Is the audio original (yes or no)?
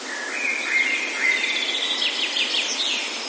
yes